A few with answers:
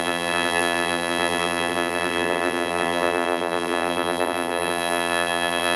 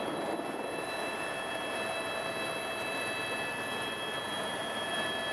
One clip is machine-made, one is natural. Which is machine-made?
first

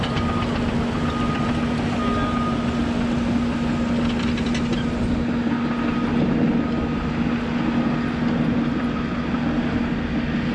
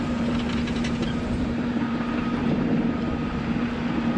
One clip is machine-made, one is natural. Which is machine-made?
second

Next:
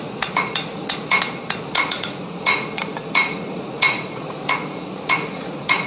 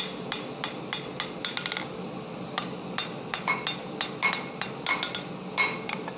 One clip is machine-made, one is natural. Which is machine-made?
first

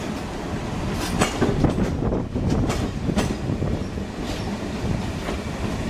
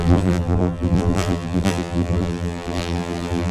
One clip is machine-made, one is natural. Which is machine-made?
second